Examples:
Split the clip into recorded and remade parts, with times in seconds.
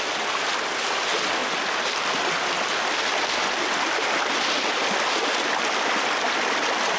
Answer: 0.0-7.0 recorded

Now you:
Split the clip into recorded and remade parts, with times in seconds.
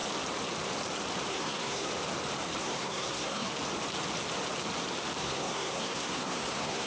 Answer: 0.0-1.3 recorded; 1.3-1.9 remade; 1.9-2.6 recorded; 2.6-3.5 remade; 3.5-5.2 recorded; 5.2-6.9 remade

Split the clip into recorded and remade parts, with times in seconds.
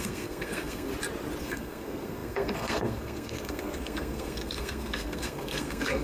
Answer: 0.0-0.9 remade; 0.9-1.4 recorded; 1.4-6.0 remade